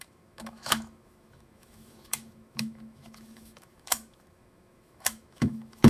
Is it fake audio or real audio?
fake